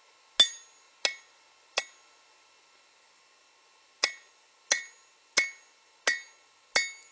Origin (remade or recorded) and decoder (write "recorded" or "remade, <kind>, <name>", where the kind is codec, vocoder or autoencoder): recorded